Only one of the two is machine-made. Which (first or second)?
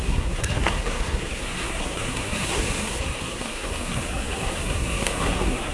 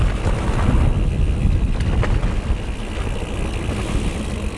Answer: first